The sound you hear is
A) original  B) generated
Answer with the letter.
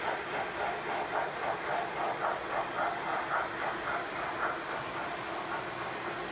A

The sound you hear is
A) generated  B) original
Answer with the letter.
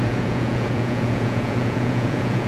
A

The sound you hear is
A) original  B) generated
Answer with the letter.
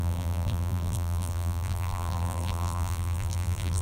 B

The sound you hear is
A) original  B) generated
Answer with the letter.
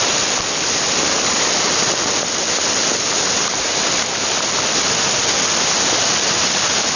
A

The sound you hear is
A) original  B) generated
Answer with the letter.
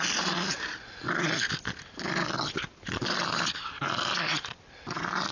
A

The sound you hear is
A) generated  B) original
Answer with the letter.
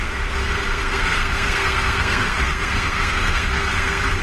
A